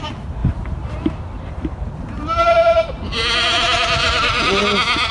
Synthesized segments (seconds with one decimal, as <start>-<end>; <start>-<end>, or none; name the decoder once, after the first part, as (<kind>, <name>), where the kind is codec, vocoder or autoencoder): 0.4-2.0 (vocoder, BigVGAN v2); 4.0-4.6